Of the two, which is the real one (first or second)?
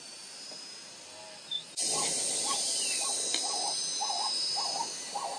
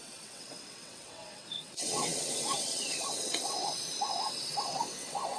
first